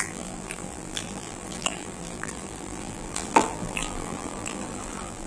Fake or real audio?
fake